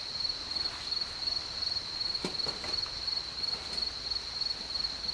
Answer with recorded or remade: recorded